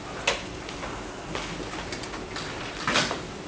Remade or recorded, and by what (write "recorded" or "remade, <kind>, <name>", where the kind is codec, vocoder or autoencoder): recorded